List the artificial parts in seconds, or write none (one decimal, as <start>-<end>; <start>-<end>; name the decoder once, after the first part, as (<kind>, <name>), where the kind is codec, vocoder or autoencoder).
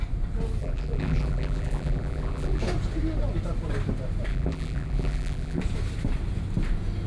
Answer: 0.6-2.6 (vocoder, BigVGAN v2); 4.3-5.6